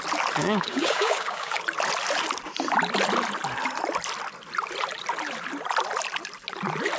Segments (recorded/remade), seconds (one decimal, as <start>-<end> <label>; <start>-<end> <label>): 0.0-0.4 recorded; 0.4-1.6 remade; 1.6-7.0 recorded